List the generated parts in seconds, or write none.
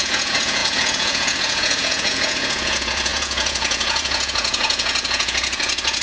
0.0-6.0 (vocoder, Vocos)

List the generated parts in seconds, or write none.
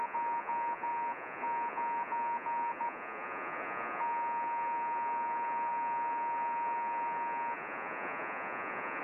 0.0-9.0 (vocoder, Vocos)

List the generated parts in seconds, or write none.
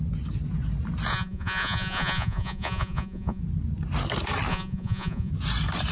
1.1-3.4 (vocoder, Vocos); 4.5-5.3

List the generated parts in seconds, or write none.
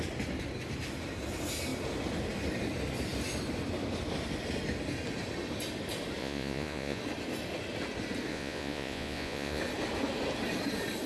6.2-7.0 (vocoder, Vocos); 8.3-9.6